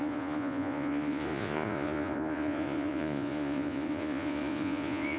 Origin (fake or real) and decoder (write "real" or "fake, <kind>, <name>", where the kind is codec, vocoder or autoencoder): fake, vocoder, Vocos